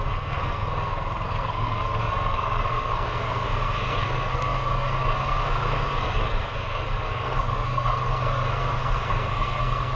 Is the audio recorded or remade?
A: remade